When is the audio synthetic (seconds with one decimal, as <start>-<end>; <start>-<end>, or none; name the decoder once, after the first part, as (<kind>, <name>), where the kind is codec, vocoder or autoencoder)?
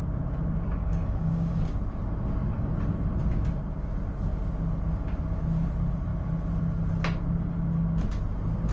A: 0.8-1.6 (codec, DAC)